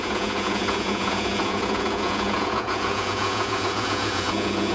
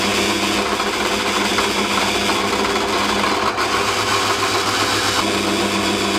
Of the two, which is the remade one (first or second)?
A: first